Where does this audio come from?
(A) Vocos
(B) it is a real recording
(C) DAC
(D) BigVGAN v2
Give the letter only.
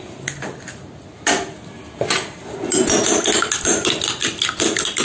B